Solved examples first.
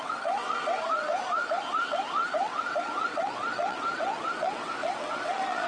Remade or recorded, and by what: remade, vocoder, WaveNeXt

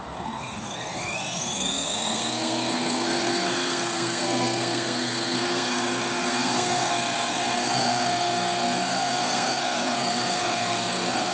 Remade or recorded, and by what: remade, codec, SNAC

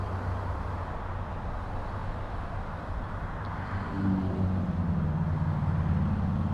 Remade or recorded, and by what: recorded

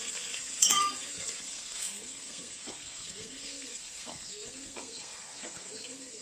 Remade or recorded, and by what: remade, codec, SNAC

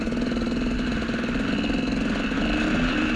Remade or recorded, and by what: recorded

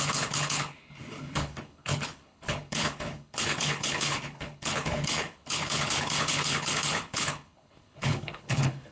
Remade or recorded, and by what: remade, codec, HILCodec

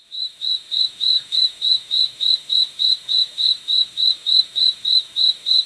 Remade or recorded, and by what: remade, autoencoder, DAC-VAE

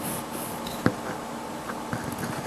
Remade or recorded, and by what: recorded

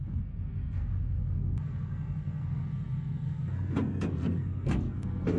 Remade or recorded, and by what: remade, codec, SNAC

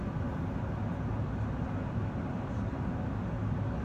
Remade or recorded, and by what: recorded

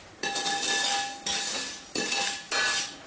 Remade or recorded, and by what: recorded